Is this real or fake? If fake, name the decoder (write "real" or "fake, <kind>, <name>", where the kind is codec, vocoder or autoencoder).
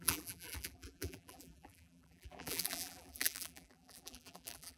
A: fake, vocoder, BigVGAN v2